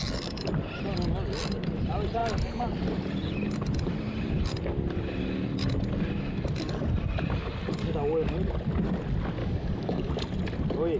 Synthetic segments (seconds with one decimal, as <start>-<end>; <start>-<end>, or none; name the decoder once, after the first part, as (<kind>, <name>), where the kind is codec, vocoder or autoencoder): 9.4-10.1 (codec, DAC)